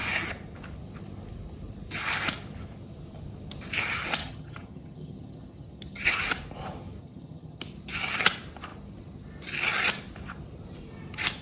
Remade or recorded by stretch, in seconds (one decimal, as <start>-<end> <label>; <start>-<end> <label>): 0.0-4.2 recorded; 4.2-6.1 remade; 6.1-7.0 recorded; 7.0-7.6 remade; 7.6-11.4 recorded